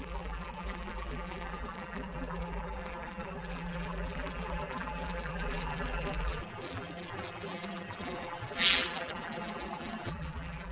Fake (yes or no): yes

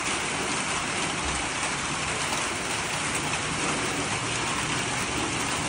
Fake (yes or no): no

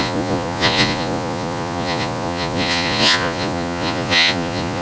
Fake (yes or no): yes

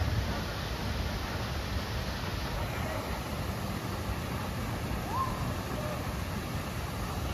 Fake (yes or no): no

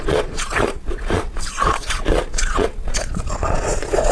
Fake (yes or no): yes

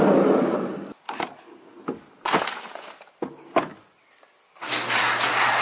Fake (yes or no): no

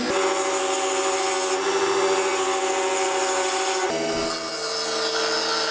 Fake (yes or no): no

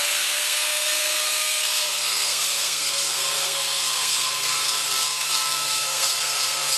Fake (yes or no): yes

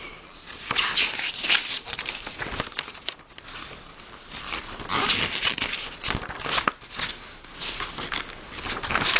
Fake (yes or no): no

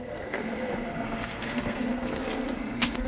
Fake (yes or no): yes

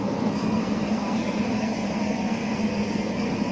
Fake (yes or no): yes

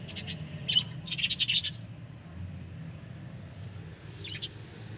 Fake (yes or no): no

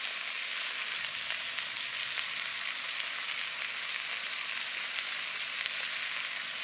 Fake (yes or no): no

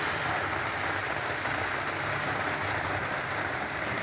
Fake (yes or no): no